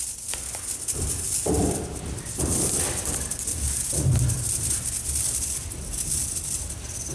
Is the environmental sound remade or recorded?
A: recorded